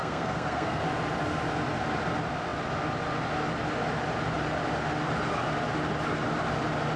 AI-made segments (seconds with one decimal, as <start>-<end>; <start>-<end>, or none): 0.0-0.8

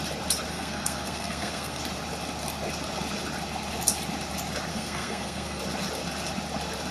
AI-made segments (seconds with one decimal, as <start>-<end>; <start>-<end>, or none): 0.5-1.8; 4.7-5.6

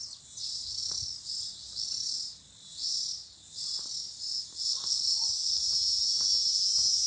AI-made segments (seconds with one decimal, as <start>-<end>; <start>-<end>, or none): 4.7-5.6

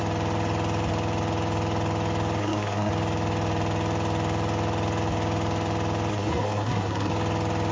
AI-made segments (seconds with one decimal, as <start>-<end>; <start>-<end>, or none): 2.4-2.9; 6.1-7.1

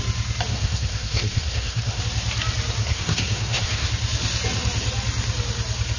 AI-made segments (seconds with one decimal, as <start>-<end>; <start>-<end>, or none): 0.5-2.0; 2.8-3.9

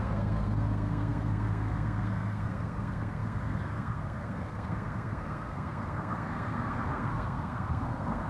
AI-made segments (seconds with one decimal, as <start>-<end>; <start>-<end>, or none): 0.0-8.3

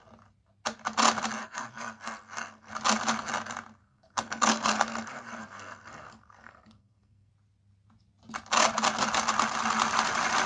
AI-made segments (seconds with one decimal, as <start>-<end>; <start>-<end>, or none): 1.4-2.7; 3.8-7.3

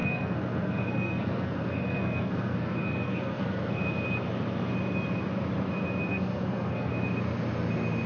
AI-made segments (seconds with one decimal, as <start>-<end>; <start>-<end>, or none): 0.0-3.8; 6.1-6.9